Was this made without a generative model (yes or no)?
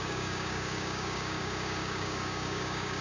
no